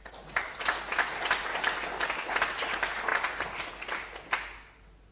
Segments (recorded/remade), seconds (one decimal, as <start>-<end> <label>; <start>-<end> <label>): 0.0-5.1 recorded

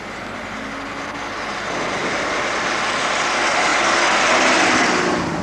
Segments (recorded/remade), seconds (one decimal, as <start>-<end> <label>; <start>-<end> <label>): 0.0-2.0 recorded; 2.0-2.6 remade; 2.6-5.4 recorded

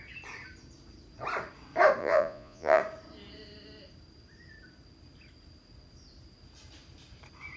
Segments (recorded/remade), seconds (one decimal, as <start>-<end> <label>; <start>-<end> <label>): 0.0-2.0 recorded; 2.0-2.8 remade; 2.8-7.6 recorded

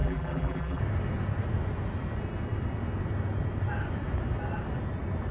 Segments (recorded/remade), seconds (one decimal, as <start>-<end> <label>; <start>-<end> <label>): 0.0-0.8 remade; 0.8-5.3 recorded

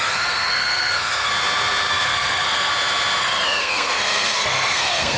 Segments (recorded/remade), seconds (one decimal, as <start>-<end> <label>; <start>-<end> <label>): 0.0-1.3 remade; 1.3-1.9 recorded; 1.9-2.7 remade; 2.7-3.2 recorded; 3.2-5.2 remade

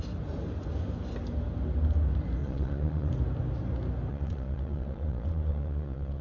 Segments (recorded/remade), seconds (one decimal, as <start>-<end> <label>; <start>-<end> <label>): 0.0-2.4 recorded; 2.4-3.1 remade; 3.1-4.1 recorded; 4.1-6.2 remade